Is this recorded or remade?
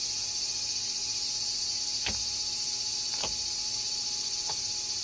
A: remade